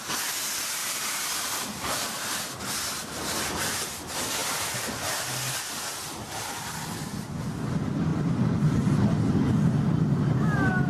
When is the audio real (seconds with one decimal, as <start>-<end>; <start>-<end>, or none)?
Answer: 0.0-10.9